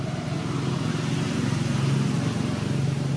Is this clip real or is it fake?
real